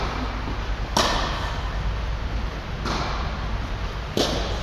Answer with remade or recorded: recorded